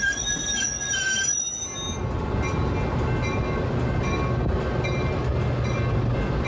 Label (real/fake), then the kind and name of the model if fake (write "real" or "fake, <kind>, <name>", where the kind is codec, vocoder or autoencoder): real